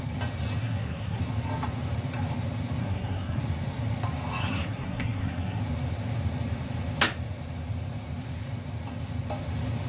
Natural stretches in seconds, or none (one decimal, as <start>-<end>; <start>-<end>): 0.0-0.6; 1.2-2.8; 3.4-4.4; 5.6-9.9